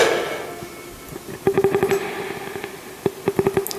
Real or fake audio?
real